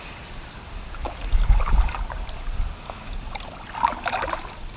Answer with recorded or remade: recorded